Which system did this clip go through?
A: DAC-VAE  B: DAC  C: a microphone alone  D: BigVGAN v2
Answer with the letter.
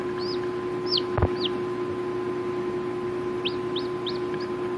C